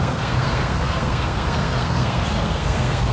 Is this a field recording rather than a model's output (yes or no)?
no